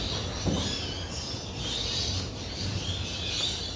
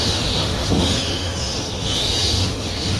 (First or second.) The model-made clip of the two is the second